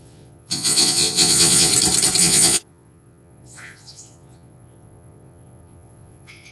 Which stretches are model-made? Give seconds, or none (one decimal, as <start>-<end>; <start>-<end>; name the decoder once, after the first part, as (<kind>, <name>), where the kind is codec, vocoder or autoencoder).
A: 0.0-1.7 (vocoder, Vocos); 2.2-6.5